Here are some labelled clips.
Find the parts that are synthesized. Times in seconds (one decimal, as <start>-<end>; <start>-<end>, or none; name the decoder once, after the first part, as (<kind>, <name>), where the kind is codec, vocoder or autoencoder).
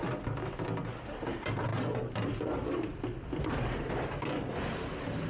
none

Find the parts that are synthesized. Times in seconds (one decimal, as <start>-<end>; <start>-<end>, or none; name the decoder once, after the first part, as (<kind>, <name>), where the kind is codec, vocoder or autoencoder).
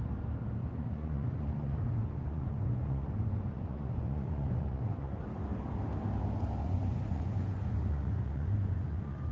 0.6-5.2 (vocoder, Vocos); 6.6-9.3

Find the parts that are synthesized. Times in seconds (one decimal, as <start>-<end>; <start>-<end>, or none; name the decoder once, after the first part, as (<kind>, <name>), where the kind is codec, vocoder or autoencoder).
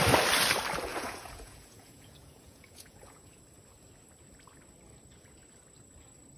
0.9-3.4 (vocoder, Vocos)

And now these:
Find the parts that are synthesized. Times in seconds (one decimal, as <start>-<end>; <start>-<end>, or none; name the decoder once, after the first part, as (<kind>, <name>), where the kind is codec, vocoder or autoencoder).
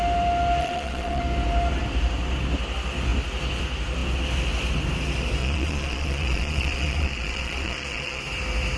0.6-1.2 (vocoder, Vocos); 5.4-8.2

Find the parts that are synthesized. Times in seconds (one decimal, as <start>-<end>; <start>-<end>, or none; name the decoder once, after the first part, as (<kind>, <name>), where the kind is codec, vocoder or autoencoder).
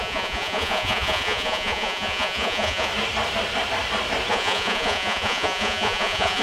0.0-2.9 (vocoder, Vocos); 4.3-6.4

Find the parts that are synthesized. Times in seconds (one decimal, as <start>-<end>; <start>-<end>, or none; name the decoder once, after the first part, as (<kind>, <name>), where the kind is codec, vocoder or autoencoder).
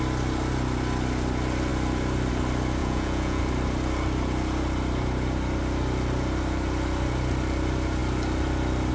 2.8-3.4 (vocoder, Vocos)